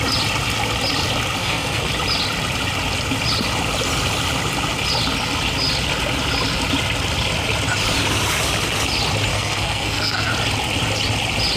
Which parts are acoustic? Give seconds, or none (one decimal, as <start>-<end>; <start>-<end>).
0.0-1.4; 1.9-9.3; 10.3-11.6